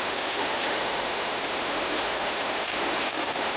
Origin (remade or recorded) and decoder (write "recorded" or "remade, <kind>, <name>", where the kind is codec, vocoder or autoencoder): remade, autoencoder, DAC-VAE